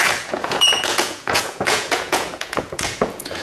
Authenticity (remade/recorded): remade